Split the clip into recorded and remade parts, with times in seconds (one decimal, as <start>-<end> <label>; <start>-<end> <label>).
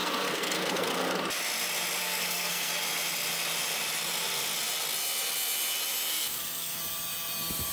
0.0-1.2 remade; 1.2-2.0 recorded; 2.0-2.7 remade; 2.7-6.1 recorded; 6.1-6.8 remade; 6.8-7.7 recorded